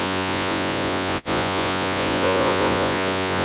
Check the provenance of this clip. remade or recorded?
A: remade